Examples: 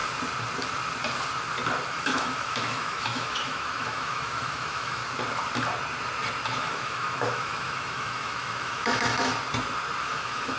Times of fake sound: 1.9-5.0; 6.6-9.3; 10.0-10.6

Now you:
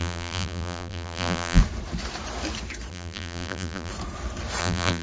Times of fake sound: 0.0-1.6; 2.9-3.9; 4.6-5.0

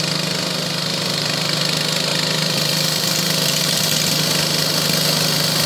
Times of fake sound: 0.9-1.6; 2.1-3.9

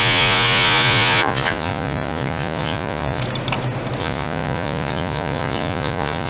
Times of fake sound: 0.0-3.2; 4.0-6.3

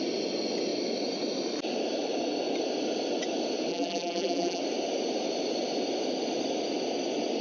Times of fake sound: 3.7-4.6

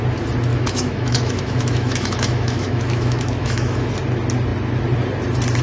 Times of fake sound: 0.5-3.9

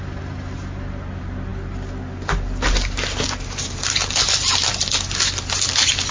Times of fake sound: none

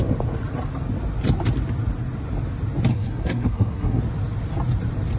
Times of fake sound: 2.9-4.0